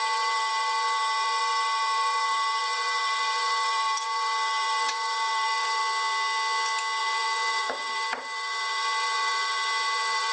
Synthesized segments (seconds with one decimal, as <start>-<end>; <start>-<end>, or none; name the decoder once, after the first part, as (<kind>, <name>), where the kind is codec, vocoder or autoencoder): 0.0-5.8 (vocoder, BigVGAN v2); 7.0-10.3